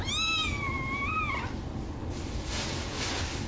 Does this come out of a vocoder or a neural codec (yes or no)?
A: no